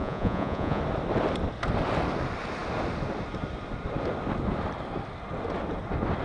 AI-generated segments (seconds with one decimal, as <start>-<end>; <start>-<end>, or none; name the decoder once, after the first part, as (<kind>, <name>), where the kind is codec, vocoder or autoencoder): 0.0-0.8 (vocoder, Vocos)